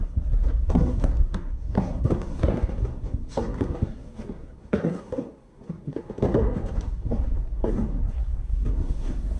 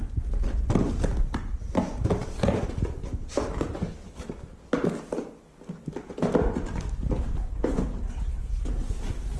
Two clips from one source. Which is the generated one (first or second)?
first